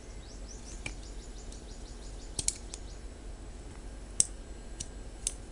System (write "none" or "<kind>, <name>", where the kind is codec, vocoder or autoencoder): none